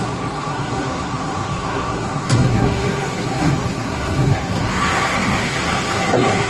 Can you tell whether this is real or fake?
fake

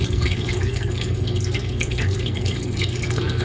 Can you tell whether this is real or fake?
fake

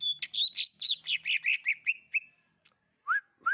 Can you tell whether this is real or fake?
real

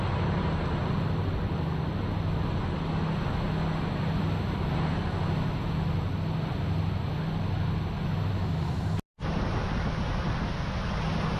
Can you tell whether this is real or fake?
real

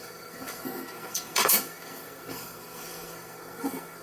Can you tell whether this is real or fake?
fake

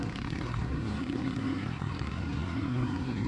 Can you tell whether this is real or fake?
fake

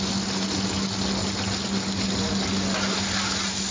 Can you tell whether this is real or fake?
real